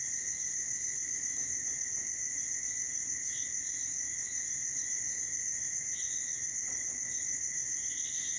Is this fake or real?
real